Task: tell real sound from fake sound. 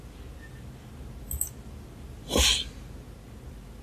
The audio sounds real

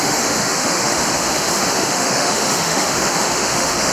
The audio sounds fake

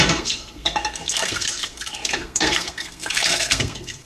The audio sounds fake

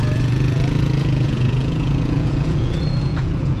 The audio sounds fake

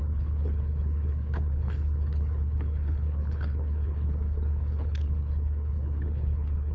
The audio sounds fake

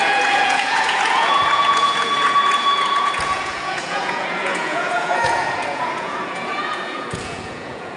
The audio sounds fake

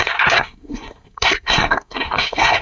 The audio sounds fake